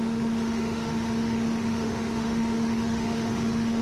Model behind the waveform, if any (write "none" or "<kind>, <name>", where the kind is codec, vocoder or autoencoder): autoencoder, DAC-VAE